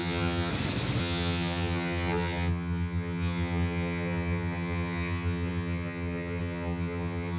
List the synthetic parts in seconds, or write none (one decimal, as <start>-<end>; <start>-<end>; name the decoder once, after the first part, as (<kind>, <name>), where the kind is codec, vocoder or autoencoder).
0.0-0.5 (vocoder, HiFi-GAN); 1.0-7.4